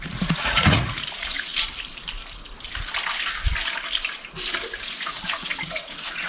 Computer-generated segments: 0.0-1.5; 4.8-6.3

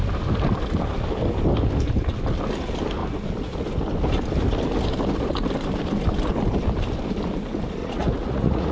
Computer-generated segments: 7.8-8.7